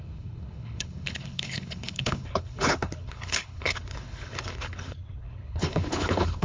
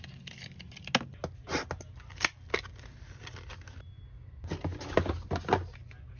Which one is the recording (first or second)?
second